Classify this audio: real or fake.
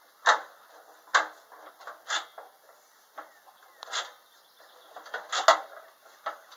real